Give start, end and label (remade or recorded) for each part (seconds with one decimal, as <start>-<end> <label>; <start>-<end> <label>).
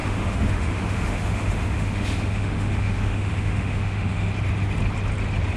0.0-4.3 remade; 4.3-5.6 recorded